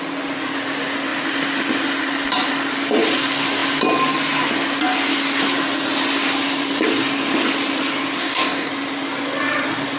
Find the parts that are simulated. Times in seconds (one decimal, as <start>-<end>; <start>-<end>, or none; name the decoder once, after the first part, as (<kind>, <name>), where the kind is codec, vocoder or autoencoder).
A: 8.2-8.7 (codec, DAC)